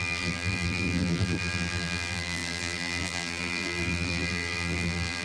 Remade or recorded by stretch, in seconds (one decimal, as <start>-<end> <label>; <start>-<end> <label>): 0.0-5.2 remade